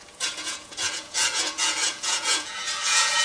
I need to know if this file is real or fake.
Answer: fake